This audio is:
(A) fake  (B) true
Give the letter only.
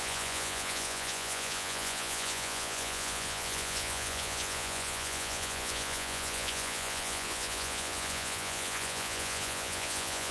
A